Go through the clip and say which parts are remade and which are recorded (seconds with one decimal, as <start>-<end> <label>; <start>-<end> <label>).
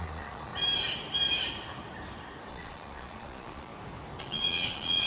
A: 0.0-0.5 remade; 0.5-2.5 recorded; 2.5-3.7 remade; 3.7-4.2 recorded; 4.2-5.1 remade